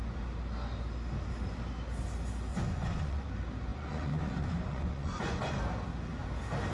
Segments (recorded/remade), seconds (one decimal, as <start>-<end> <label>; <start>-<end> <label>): 0.0-2.5 recorded; 2.5-3.3 remade; 3.3-3.7 recorded; 3.7-5.6 remade; 5.6-6.7 recorded